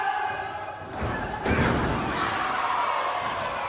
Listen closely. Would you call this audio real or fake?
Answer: fake